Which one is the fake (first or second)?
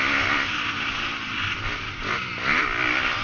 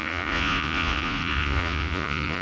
second